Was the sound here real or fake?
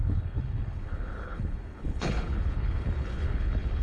fake